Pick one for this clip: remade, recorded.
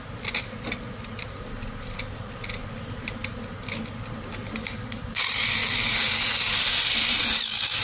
recorded